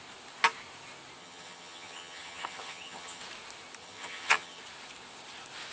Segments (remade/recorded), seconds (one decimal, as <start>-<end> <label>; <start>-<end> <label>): 0.0-1.2 recorded; 1.2-3.2 remade; 3.2-3.8 recorded; 3.8-4.6 remade; 4.6-5.7 recorded